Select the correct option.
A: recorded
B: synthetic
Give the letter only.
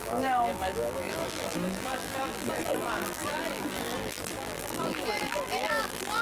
B